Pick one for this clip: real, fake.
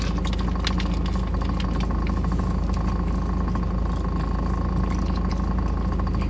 real